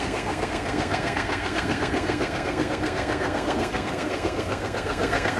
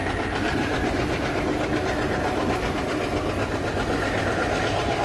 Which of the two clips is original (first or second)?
second